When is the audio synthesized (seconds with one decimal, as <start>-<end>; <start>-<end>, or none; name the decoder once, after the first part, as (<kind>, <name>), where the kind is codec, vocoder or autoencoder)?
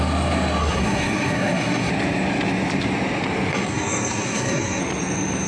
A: 0.6-1.9 (codec, SNAC); 3.5-4.8